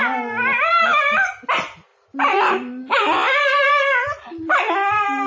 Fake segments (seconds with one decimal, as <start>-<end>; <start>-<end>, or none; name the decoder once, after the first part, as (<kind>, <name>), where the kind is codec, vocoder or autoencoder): 1.9-5.3 (vocoder, BigVGAN v2)